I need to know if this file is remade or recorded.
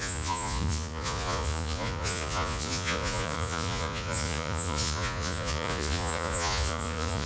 remade